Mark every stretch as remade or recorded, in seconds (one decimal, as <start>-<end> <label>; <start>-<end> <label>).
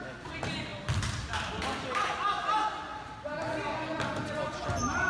0.0-5.1 recorded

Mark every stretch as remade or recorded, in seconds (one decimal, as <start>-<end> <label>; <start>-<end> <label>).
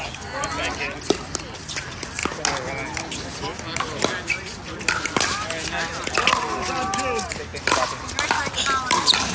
0.0-9.3 recorded